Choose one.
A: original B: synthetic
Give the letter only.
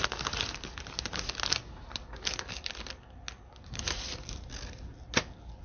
A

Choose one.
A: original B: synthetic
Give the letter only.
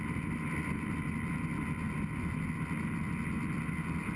A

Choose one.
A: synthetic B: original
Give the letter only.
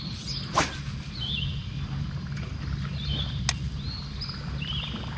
B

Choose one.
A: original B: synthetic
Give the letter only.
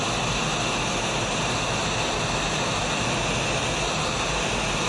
A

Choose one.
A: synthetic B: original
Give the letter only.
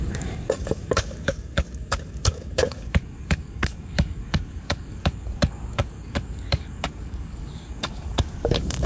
A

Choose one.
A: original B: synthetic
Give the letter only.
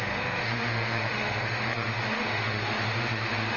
B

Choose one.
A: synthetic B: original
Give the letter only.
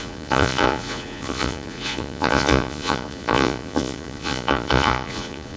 A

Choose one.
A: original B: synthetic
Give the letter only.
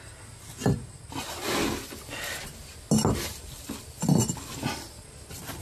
A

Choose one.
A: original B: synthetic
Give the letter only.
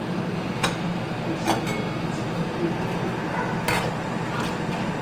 A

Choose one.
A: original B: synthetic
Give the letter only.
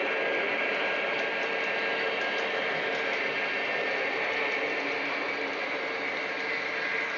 A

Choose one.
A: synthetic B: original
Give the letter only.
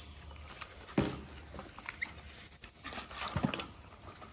B